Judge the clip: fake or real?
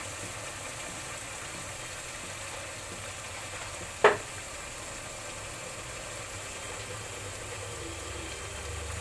real